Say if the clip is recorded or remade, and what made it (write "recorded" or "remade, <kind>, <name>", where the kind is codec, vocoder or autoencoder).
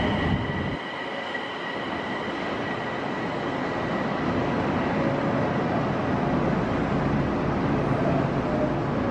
recorded